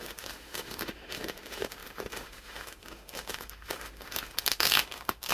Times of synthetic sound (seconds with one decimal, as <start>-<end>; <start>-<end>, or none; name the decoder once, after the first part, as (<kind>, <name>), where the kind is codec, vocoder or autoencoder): 0.0-5.3 (autoencoder, DAC-VAE)